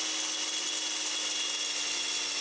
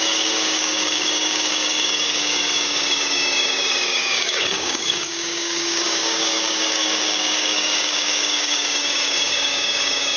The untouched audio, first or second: first